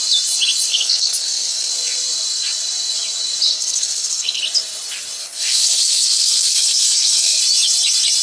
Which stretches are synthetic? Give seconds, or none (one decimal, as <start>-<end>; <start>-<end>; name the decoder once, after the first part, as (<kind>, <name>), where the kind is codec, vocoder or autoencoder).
0.7-1.7 (codec, SNAC); 3.5-4.4; 5.2-7.4